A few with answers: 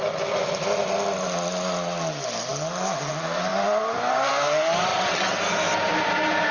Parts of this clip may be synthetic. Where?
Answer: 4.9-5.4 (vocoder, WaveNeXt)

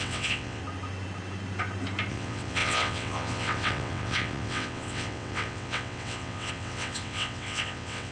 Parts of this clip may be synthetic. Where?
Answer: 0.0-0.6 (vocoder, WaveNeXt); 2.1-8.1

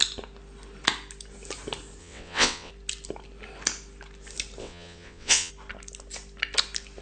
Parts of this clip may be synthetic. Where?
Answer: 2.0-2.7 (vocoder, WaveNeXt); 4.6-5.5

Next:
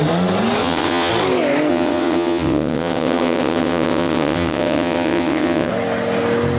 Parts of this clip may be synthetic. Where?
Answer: 0.6-1.1 (vocoder, WaveNeXt); 1.7-5.7

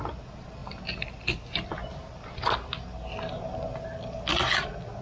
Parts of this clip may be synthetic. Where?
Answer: none

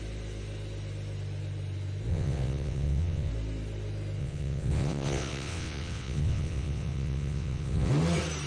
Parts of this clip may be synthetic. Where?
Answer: 2.1-3.3 (vocoder, WaveNeXt); 4.2-7.9

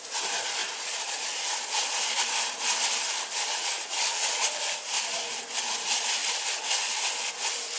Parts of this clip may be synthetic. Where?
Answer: 3.5-4.6 (vocoder, WaveNeXt)